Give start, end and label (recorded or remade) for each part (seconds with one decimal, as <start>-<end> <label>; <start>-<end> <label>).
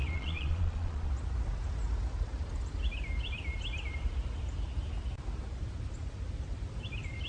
0.0-1.1 remade; 1.1-7.3 recorded